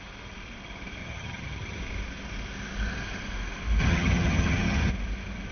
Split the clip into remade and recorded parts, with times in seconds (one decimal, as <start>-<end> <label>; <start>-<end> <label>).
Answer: 0.0-1.0 recorded; 1.0-1.8 remade; 1.8-3.8 recorded; 3.8-4.9 remade; 4.9-5.5 recorded